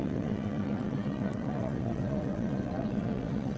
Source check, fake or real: fake